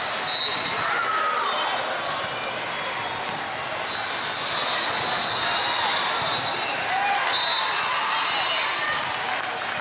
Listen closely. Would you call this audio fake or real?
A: real